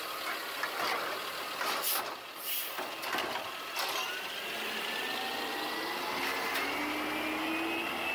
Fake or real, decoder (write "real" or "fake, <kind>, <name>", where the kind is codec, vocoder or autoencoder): real